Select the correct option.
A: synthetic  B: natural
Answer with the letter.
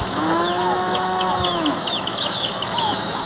A